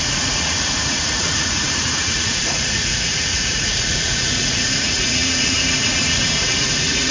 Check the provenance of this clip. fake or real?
fake